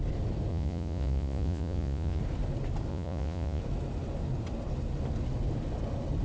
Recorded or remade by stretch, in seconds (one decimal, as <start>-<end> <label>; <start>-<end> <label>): 0.0-0.5 recorded; 0.5-2.2 remade; 2.2-2.9 recorded; 2.9-3.6 remade; 3.6-6.2 recorded